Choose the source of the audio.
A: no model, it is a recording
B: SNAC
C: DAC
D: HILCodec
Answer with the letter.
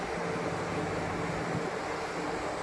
A